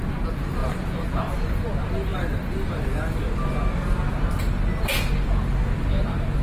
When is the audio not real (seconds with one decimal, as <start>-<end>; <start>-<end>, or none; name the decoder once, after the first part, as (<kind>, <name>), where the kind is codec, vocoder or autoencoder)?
none